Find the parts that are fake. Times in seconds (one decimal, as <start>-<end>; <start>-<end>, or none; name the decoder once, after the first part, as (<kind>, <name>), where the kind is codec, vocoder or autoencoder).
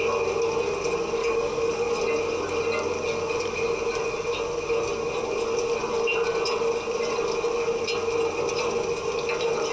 1.2-1.9 (codec, DAC)